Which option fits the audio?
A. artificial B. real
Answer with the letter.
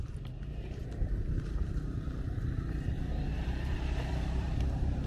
A